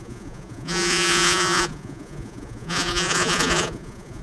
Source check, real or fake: fake